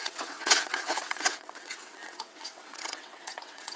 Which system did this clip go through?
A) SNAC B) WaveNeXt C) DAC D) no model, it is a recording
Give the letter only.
B